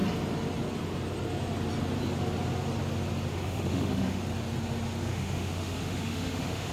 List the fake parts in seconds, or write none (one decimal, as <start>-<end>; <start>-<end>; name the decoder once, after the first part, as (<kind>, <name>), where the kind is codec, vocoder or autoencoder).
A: 3.3-4.2 (autoencoder, DAC-VAE); 5.0-6.7